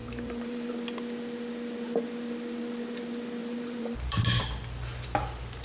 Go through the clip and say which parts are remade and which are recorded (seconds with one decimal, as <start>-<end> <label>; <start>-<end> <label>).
0.0-0.7 remade; 0.7-3.4 recorded; 3.4-4.3 remade; 4.3-5.6 recorded